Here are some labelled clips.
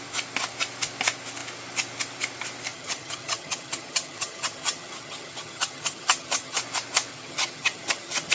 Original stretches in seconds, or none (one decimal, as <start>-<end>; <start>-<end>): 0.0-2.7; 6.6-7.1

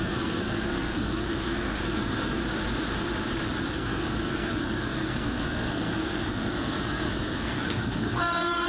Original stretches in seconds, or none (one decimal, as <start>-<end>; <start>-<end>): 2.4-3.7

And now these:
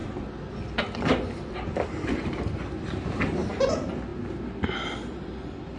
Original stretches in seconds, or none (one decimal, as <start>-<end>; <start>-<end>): 0.0-5.8

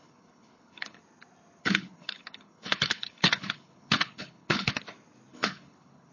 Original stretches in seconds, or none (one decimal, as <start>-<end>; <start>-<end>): 1.0-1.6; 4.7-5.3

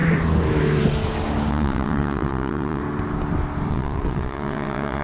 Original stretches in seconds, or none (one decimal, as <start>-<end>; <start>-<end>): 0.0-1.5; 2.8-3.7

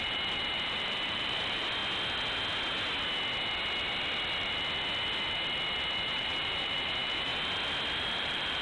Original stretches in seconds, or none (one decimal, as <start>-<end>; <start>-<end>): 1.8-5.9; 7.3-8.0

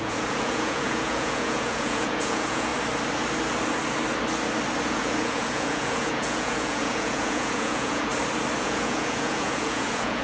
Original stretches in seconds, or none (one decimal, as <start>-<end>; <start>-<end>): 2.7-4.9; 8.1-8.6